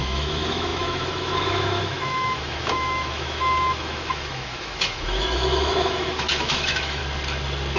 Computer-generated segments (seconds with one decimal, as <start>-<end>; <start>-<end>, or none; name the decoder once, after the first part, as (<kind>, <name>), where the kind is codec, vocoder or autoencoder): 0.0-7.0 (autoencoder, DAC-VAE)